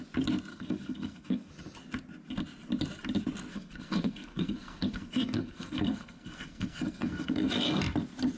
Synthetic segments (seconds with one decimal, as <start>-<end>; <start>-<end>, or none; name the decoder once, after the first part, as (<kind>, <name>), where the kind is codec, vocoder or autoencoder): 0.5-1.5 (codec, SNAC); 3.5-7.5